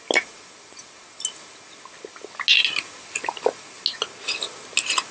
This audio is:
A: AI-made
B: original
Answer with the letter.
B